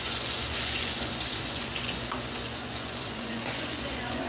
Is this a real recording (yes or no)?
no